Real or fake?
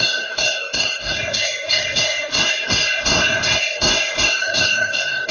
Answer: fake